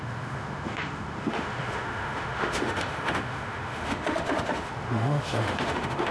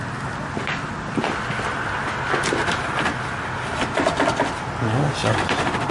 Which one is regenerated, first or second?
first